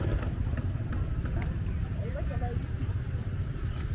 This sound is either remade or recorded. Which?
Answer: remade